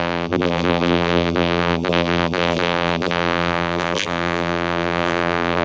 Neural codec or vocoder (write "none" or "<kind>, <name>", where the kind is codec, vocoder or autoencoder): vocoder, BigVGAN v2